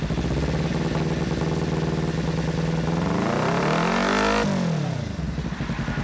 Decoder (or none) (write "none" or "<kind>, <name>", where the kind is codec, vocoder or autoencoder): none